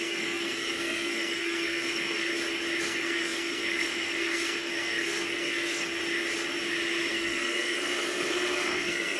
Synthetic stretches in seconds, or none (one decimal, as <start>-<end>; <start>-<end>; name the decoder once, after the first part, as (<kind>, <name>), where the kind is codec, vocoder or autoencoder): 0.0-2.3 (codec, SNAC); 2.8-6.0; 7.1-9.2